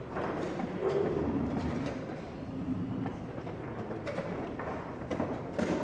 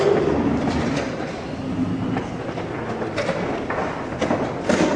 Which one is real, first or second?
second